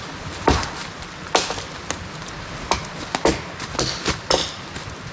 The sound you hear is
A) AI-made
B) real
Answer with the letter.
B